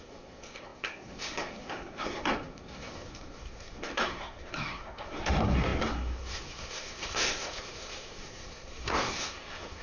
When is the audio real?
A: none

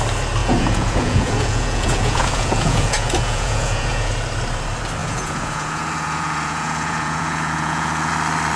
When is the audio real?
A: 0.0-0.4; 4.1-5.0; 8.1-8.6